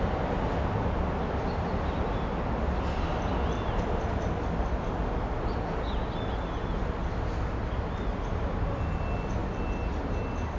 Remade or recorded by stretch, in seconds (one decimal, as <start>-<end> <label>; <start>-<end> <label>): 0.0-10.6 recorded